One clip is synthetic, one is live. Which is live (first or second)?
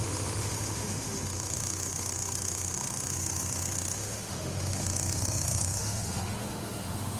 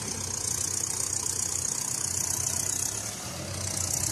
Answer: second